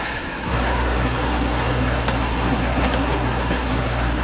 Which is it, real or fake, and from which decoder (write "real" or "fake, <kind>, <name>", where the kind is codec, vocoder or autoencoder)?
fake, codec, SNAC